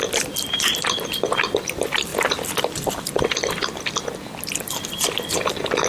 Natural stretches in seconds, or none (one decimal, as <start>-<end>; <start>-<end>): 0.0-5.9